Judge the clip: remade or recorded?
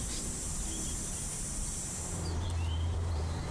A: remade